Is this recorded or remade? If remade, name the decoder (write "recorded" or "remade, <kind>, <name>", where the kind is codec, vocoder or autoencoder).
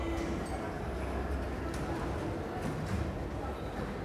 recorded